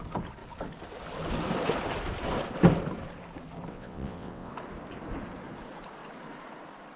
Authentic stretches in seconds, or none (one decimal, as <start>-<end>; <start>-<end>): 0.0-3.7; 4.5-7.0